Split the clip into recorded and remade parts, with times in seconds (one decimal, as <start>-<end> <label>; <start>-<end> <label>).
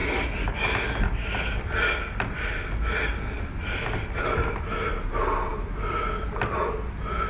0.0-7.3 recorded